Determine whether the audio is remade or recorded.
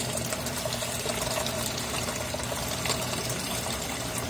remade